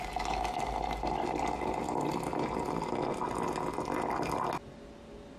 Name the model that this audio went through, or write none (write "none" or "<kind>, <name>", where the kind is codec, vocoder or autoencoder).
none